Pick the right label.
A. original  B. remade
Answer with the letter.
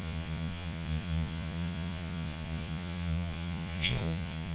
B